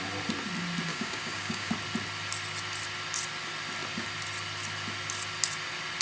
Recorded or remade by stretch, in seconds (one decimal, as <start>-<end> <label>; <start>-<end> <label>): 0.0-0.9 recorded; 0.9-1.7 remade; 1.7-6.0 recorded